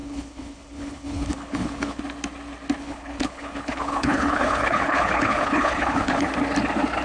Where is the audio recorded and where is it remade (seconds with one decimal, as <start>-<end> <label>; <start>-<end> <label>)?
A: 0.0-2.0 remade; 2.0-2.8 recorded; 2.8-6.3 remade; 6.3-7.0 recorded